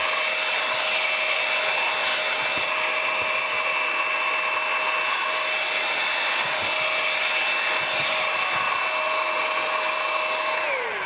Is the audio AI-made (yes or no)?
no